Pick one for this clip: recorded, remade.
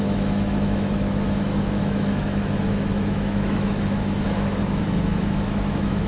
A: remade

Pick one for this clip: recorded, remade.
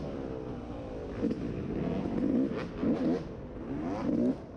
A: recorded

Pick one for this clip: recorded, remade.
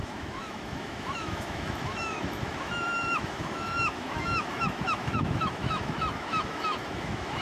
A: remade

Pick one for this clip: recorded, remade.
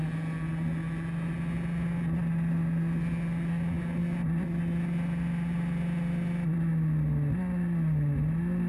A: recorded